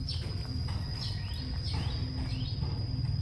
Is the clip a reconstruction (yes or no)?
no